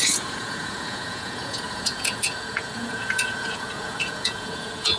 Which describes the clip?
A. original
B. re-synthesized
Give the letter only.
B